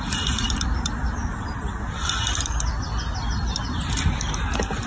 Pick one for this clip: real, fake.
real